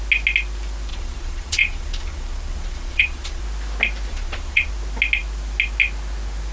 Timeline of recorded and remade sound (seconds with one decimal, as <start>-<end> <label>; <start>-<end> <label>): 0.0-0.9 recorded; 0.9-3.4 remade; 3.4-4.1 recorded; 4.1-4.7 remade; 4.7-6.5 recorded